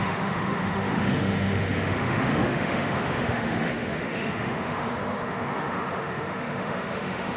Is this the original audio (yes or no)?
no